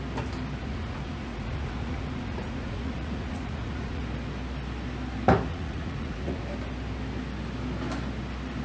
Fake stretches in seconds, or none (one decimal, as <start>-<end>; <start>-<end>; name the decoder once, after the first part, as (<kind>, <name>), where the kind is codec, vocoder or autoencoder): 0.6-4.0 (vocoder, Vocos); 5.5-6.4